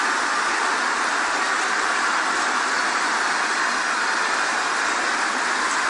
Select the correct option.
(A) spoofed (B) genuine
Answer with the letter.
B